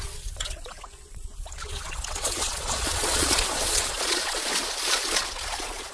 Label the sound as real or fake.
fake